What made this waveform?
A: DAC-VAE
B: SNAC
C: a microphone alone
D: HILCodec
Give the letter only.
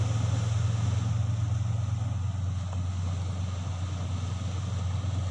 C